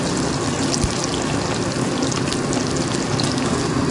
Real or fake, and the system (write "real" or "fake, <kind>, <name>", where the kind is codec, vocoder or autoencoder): real